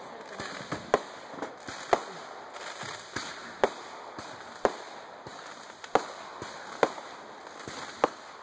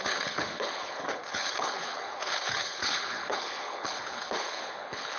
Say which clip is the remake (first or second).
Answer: second